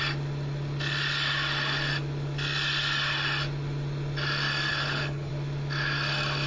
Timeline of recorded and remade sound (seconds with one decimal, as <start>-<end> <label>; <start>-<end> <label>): 0.0-4.7 recorded; 4.7-5.3 remade; 5.3-6.5 recorded